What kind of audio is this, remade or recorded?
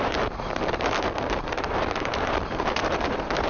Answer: remade